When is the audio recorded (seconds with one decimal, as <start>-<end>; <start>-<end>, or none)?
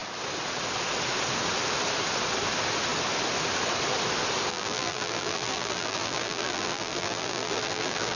0.0-4.5